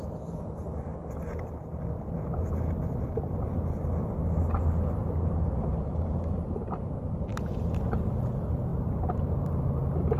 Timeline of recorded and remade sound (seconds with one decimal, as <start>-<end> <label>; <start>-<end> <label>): 0.0-5.0 recorded; 5.0-7.3 remade; 7.3-8.7 recorded; 8.7-9.7 remade; 9.7-10.2 recorded